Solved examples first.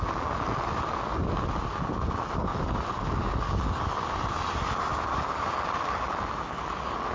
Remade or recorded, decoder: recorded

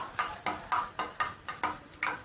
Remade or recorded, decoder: recorded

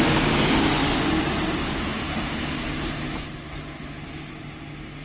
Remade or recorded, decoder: recorded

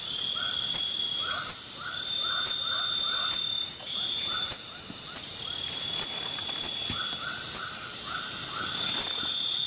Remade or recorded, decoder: recorded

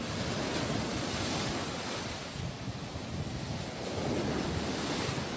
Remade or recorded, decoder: recorded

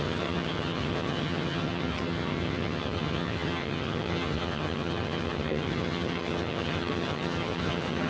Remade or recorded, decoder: remade, vocoder, HiFi-GAN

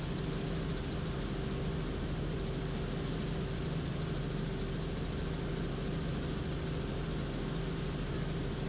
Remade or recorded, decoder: recorded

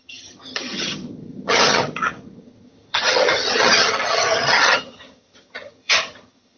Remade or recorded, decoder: remade, vocoder, HiFi-GAN